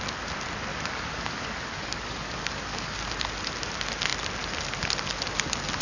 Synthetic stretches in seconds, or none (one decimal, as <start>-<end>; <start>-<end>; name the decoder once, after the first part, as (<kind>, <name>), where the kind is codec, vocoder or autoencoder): 0.7-3.0 (codec, DAC)